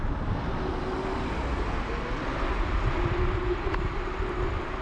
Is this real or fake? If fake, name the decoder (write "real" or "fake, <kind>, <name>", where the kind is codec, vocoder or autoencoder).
real